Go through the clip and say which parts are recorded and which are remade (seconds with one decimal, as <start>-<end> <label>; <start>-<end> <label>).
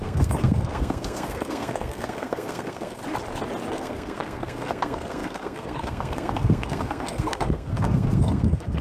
0.0-3.0 remade; 3.0-3.7 recorded; 3.7-8.8 remade